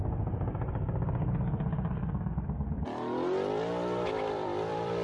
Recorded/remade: remade